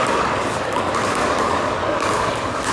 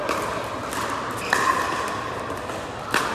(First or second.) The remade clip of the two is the first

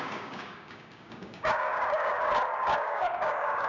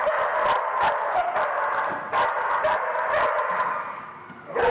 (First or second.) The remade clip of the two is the first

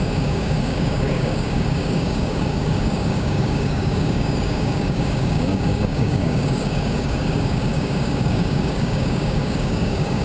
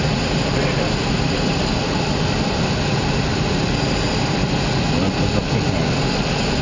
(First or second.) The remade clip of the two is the first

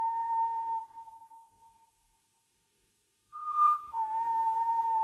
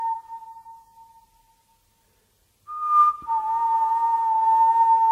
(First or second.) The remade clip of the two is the first